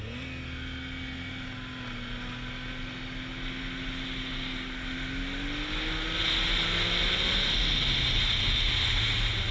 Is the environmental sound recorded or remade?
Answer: recorded